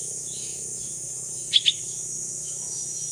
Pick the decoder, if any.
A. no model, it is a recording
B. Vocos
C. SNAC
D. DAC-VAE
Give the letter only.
D